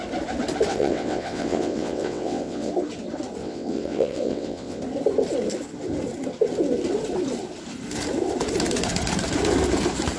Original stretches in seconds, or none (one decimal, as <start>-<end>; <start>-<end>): 0.0-0.7; 2.7-3.4; 4.8-10.2